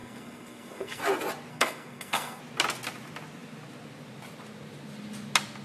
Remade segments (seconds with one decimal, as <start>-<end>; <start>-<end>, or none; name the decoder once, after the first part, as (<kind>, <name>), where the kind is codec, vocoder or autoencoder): 0.0-1.0 (codec, SNAC); 1.5-2.4